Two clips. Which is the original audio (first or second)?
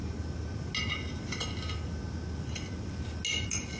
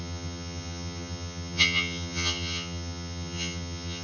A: first